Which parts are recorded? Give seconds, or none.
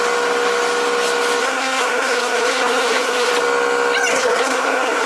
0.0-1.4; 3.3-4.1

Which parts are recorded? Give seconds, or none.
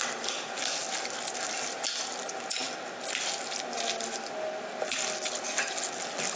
0.0-6.4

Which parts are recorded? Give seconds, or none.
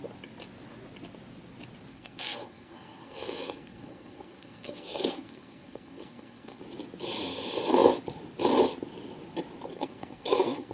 0.0-1.9; 6.6-9.7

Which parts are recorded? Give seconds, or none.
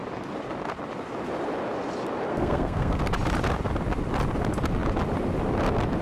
0.0-2.3; 3.0-6.0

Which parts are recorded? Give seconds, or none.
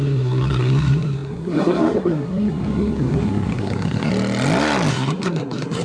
4.1-4.9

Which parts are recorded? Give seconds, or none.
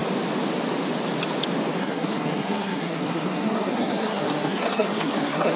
0.0-1.8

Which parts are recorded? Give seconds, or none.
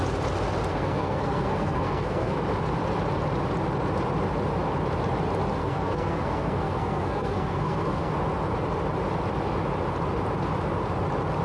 0.0-0.7; 2.4-5.6; 8.1-11.4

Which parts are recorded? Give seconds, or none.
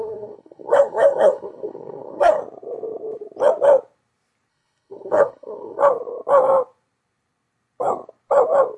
2.4-4.5; 5.8-8.8